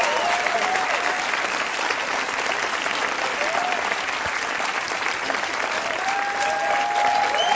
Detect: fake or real real